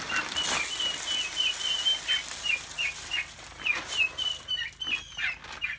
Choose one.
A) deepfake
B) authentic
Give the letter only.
B